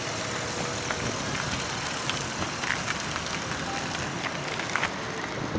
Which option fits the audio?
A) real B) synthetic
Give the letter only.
A